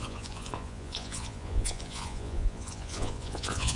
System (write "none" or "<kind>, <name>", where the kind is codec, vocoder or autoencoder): vocoder, Vocos